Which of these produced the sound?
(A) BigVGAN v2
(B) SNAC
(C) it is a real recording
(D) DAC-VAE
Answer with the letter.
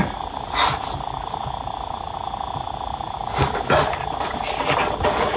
C